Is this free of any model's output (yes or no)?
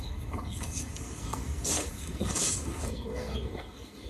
no